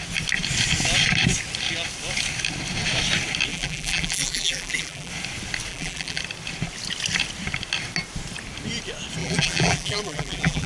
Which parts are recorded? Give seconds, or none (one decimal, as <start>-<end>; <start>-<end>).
0.0-3.5; 5.1-5.7; 6.2-9.2